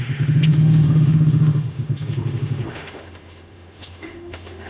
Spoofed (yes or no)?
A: yes